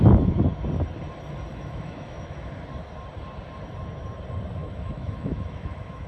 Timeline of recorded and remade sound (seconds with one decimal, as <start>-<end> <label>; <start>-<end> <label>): 0.0-1.5 recorded; 1.5-2.5 remade; 2.5-4.6 recorded; 4.6-6.1 remade